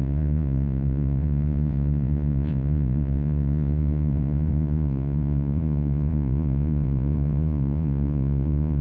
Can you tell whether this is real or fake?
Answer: fake